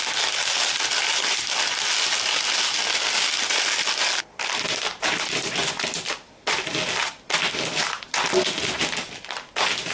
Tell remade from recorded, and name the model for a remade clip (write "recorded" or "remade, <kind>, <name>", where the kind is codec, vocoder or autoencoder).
recorded